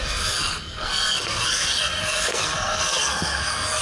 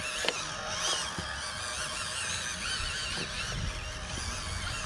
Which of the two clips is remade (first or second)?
first